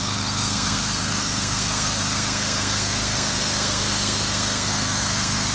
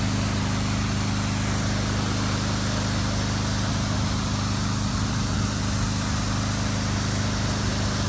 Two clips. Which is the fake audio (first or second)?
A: first